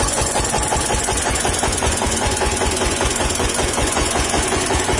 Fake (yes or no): yes